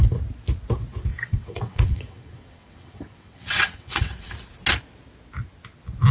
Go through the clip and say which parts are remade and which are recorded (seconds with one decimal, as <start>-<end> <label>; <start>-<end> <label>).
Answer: 0.0-1.1 recorded; 1.1-4.3 remade; 4.3-6.1 recorded